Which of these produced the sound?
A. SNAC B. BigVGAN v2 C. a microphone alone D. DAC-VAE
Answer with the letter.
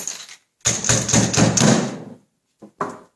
C